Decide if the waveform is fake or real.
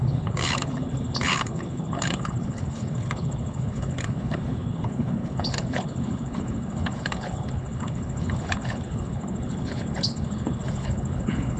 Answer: fake